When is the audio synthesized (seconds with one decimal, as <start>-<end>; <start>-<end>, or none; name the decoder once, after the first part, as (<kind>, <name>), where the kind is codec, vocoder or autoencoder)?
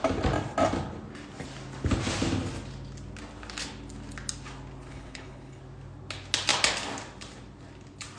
4.9-5.6 (codec, HILCodec)